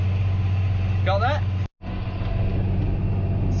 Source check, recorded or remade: recorded